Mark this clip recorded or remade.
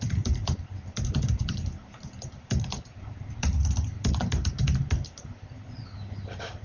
remade